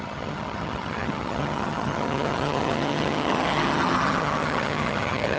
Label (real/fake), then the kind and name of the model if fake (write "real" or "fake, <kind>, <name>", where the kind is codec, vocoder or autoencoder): fake, vocoder, HiFi-GAN